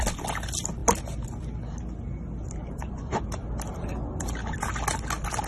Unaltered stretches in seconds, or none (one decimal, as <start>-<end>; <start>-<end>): 0.0-2.6; 3.2-5.5